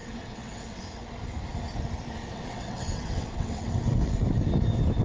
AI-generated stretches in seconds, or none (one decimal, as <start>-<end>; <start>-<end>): 0.0-0.8; 2.2-4.2